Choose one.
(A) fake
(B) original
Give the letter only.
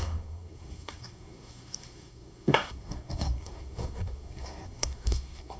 A